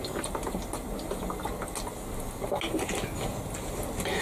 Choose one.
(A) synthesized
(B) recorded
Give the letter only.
B